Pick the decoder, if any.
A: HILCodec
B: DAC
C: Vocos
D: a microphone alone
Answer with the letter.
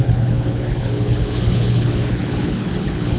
A